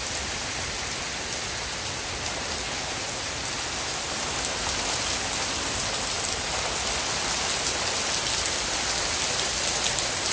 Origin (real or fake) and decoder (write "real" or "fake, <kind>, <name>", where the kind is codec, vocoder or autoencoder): real